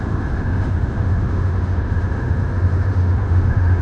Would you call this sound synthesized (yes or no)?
yes